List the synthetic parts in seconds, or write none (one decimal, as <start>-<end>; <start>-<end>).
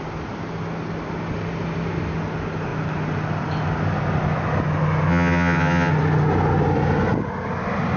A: 5.1-5.9